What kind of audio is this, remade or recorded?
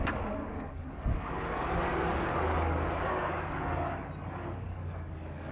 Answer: remade